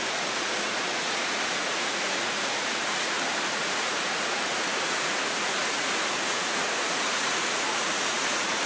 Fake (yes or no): yes